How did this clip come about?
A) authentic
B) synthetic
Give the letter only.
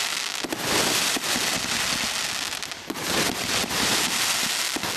A